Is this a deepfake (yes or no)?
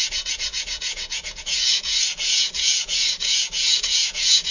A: yes